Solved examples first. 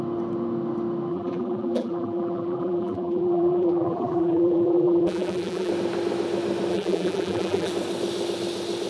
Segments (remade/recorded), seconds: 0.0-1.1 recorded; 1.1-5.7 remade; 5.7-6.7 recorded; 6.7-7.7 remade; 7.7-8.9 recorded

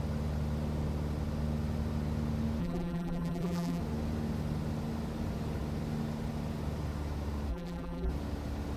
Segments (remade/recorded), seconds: 0.0-2.6 recorded; 2.6-3.8 remade; 3.8-7.5 recorded; 7.5-8.1 remade; 8.1-8.8 recorded

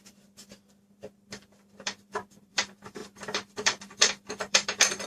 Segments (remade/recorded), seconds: 0.0-5.1 remade

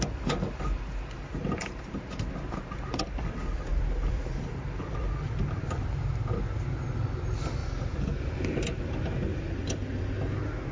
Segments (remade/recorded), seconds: 0.0-3.7 recorded; 3.7-5.8 remade; 5.8-7.6 recorded; 7.6-8.6 remade; 8.6-9.3 recorded; 9.3-10.1 remade; 10.1-10.7 recorded